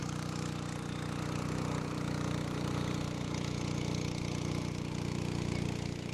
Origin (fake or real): fake